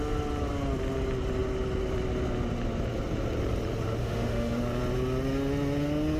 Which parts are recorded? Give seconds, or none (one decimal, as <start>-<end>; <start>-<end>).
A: 0.0-4.0; 4.6-6.2